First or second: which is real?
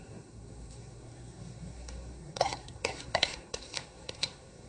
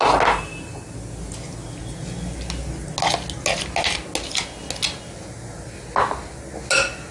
second